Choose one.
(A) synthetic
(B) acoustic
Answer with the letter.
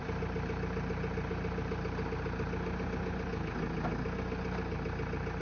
B